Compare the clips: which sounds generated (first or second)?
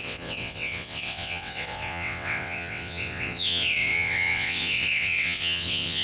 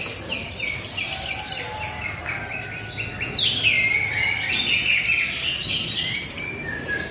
first